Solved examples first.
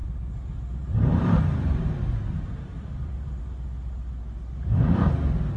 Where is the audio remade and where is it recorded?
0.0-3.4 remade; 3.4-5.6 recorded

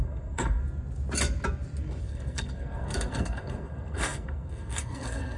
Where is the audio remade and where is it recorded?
0.0-0.6 remade; 0.6-2.0 recorded; 2.0-5.4 remade

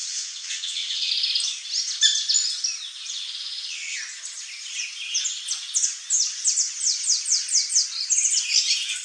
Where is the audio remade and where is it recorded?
0.0-1.1 remade; 1.1-9.0 recorded

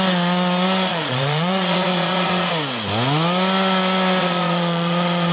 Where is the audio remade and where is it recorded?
0.0-0.9 recorded; 0.9-2.5 remade; 2.5-4.2 recorded; 4.2-5.3 remade

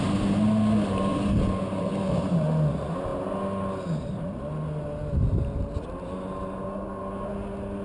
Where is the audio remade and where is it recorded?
0.0-7.8 recorded

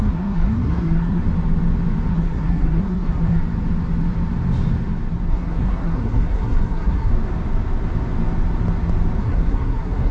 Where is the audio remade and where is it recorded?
0.0-1.2 remade; 1.2-2.1 recorded; 2.1-3.4 remade; 3.4-5.3 recorded; 5.3-7.1 remade; 7.1-9.2 recorded; 9.2-10.1 remade

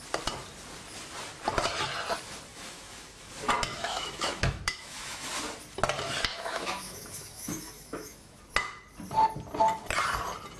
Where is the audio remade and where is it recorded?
0.0-2.5 recorded; 2.5-3.3 remade; 3.3-3.7 recorded; 3.7-5.3 remade; 5.3-6.3 recorded; 6.3-8.4 remade; 8.4-10.6 recorded